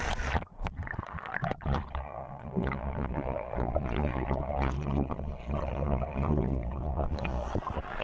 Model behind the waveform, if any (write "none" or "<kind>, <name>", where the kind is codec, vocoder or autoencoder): vocoder, Vocos